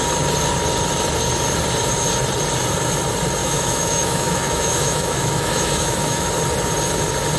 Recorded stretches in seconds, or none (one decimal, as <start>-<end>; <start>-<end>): 0.0-3.4; 6.3-7.4